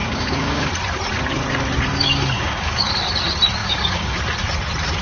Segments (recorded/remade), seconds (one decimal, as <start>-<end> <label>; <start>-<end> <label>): 0.0-0.7 remade; 0.7-1.9 recorded; 1.9-2.9 remade; 2.9-3.6 recorded; 3.6-4.2 remade; 4.2-5.0 recorded